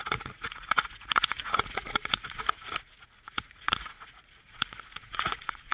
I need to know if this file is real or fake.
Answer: fake